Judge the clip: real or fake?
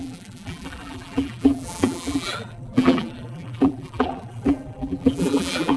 fake